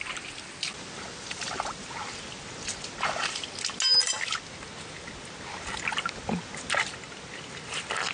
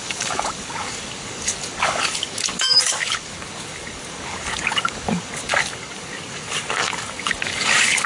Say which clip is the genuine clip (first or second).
first